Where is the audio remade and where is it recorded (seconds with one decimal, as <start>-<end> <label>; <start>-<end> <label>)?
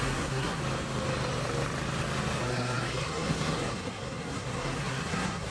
0.0-0.6 remade; 0.6-2.4 recorded; 2.4-5.5 remade